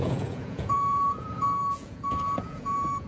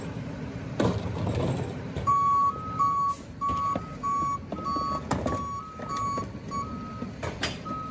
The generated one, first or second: first